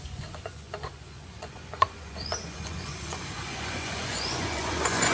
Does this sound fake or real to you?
fake